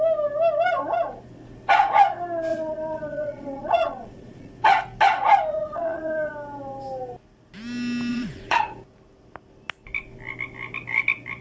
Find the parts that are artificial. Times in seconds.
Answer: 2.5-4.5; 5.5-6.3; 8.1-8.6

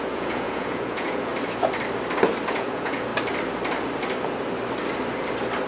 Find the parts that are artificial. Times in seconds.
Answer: 0.0-1.3; 2.5-3.1

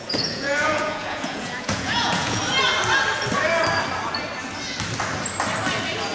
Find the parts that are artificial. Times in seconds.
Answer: 0.0-2.4

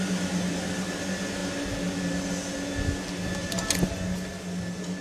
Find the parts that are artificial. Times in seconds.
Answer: none

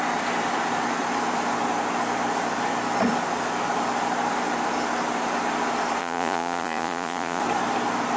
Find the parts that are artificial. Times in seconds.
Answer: 6.0-7.4

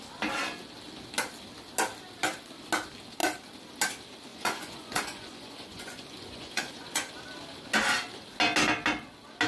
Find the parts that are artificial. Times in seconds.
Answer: 4.3-7.1

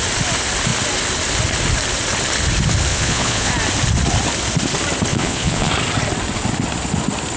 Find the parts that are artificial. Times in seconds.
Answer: 2.9-3.5; 5.1-5.7

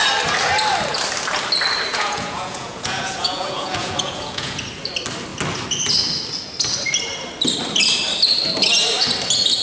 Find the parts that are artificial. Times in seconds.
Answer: 1.9-4.6